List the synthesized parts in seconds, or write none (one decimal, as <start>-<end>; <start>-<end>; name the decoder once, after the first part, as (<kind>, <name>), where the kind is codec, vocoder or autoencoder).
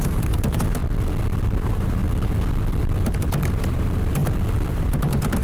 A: 0.0-0.8 (vocoder, BigVGAN v2); 1.5-2.0; 3.0-4.2; 4.7-5.4